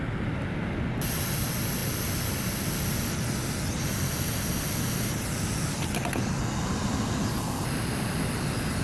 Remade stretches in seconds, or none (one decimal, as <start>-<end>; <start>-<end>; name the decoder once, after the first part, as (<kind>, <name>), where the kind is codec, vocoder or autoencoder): none